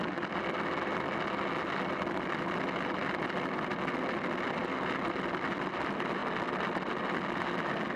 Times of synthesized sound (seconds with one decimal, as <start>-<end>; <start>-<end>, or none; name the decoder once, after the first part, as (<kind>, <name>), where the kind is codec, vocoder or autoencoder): none